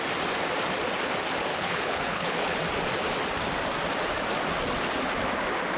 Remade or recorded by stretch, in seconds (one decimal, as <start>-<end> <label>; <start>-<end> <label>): 0.0-1.5 recorded; 1.5-2.6 remade; 2.6-5.8 recorded

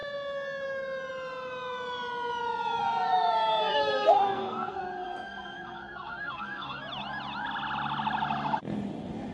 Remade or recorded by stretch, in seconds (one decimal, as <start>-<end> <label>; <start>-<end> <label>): 0.0-2.8 recorded; 2.8-6.8 remade; 6.8-9.3 recorded

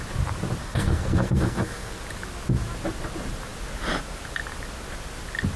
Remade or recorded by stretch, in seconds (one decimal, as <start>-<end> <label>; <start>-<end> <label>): 0.0-0.6 recorded; 0.6-2.0 remade; 2.0-5.6 recorded

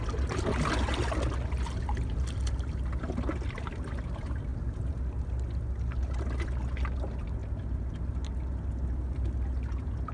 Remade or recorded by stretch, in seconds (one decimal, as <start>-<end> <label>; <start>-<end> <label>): 0.0-10.1 recorded

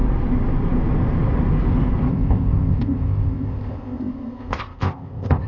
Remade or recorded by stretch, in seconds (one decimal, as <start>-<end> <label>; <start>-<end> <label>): 0.0-2.1 recorded; 2.1-5.5 remade

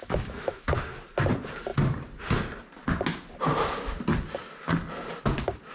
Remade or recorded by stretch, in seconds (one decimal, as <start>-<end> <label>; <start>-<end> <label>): 0.0-0.7 remade; 0.7-5.7 recorded

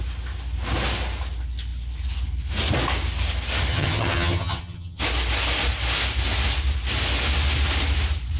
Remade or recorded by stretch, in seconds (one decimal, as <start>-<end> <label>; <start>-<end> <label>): 0.0-3.7 recorded; 3.7-5.0 remade; 5.0-8.4 recorded

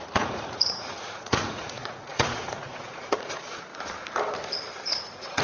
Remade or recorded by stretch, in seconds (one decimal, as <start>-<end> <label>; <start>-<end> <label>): 0.0-3.7 remade; 3.7-5.0 recorded; 5.0-5.4 remade